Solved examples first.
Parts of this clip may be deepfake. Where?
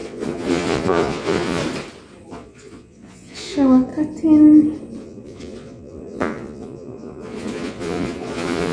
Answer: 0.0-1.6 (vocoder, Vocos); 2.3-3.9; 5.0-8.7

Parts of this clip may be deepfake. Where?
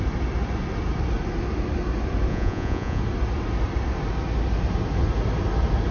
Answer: 2.3-3.0 (vocoder, Vocos)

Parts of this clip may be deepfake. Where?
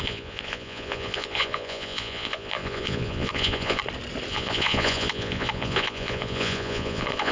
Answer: 0.0-3.8 (vocoder, Vocos); 4.3-7.3